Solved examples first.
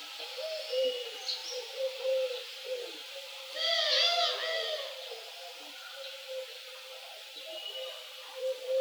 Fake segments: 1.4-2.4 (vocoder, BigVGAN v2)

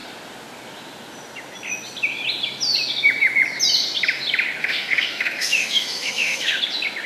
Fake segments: 4.6-6.6 (autoencoder, DAC-VAE)

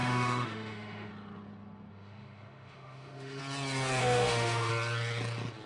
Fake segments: 0.0-1.1 (autoencoder, DAC-VAE); 1.9-3.4; 4.0-4.7

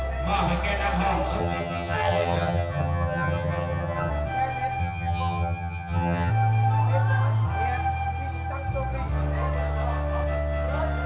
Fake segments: 1.4-4.1 (vocoder, HiFi-GAN); 4.8-6.3

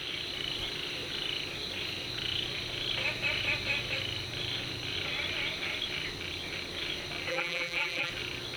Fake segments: 7.3-8.1 (vocoder, BigVGAN v2)

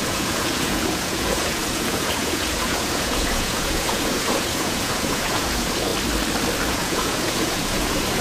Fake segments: 0.0-5.9 (vocoder, Vocos); 6.7-8.2